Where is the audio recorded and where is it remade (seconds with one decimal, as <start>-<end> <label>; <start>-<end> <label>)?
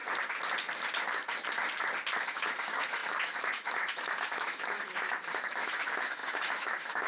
0.0-2.3 recorded; 2.3-7.1 remade